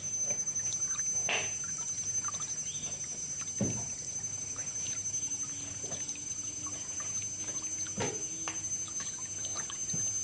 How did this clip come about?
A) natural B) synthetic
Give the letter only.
A